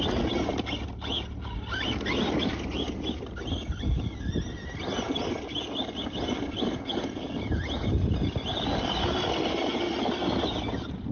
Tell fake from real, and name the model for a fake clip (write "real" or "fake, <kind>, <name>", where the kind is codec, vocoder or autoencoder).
real